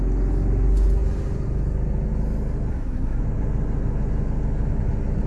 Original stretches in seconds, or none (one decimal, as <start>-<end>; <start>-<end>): 0.0-2.7; 3.2-5.3